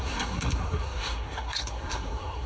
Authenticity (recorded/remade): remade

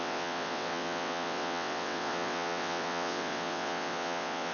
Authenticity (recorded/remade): remade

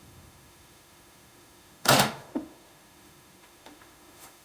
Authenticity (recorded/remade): remade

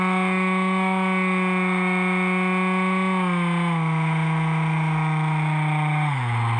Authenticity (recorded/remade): recorded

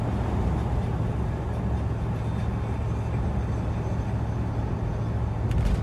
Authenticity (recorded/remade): recorded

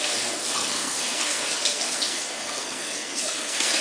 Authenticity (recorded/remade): remade